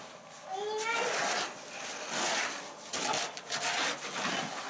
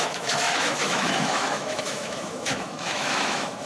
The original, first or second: first